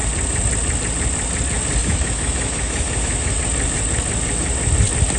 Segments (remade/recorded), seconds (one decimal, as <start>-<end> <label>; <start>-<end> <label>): 0.0-1.8 recorded; 1.8-3.4 remade; 3.4-5.2 recorded